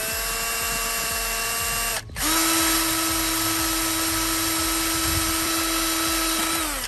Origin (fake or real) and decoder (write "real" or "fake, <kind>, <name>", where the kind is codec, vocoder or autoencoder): real